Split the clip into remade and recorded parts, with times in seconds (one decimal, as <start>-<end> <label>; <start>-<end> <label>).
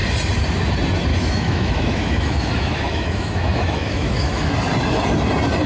0.0-1.1 recorded; 1.1-4.5 remade; 4.5-5.7 recorded